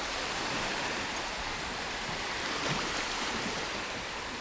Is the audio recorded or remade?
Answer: remade